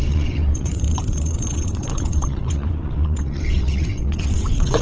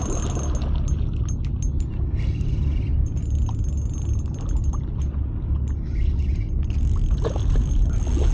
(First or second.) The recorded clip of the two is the second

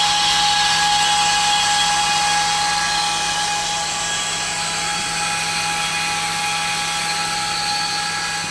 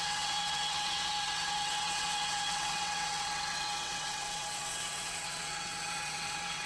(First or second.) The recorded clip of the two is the first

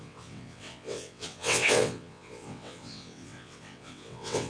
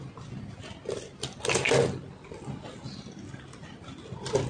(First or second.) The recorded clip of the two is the second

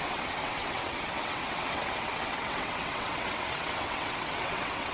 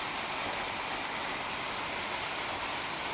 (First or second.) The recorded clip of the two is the second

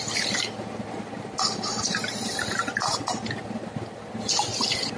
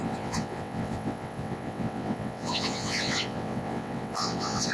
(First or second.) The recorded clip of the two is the first